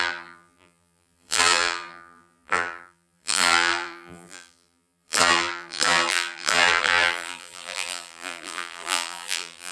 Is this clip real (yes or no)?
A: no